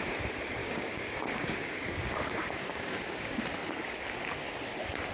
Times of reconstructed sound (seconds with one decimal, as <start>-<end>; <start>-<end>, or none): 0.6-3.4